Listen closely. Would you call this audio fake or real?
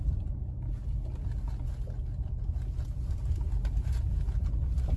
real